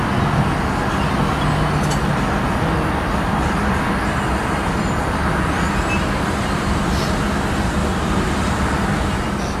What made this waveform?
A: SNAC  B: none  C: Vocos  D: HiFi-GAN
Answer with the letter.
B